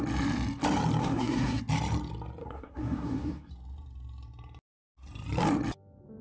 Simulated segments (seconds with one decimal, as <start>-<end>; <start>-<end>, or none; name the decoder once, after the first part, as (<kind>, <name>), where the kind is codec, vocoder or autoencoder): 1.0-1.6 (codec, SNAC); 2.4-3.5